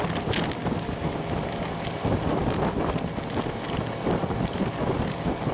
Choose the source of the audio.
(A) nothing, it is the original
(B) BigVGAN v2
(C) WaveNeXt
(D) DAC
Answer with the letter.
A